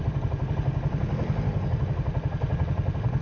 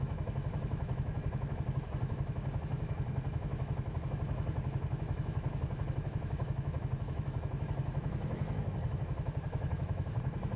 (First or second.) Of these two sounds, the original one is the first